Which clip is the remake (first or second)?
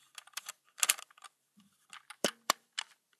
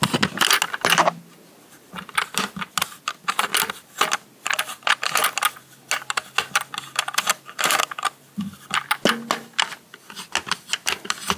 first